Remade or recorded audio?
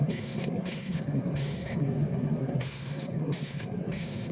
remade